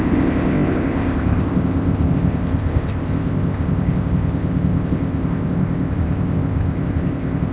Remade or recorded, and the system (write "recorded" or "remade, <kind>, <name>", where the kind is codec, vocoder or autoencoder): remade, codec, ZipCodec